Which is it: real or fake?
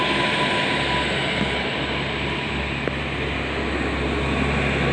real